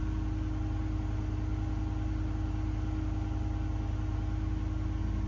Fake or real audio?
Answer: real